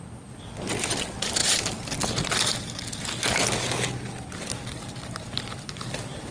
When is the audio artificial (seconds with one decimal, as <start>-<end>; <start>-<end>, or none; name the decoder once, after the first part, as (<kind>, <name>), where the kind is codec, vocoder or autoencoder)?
none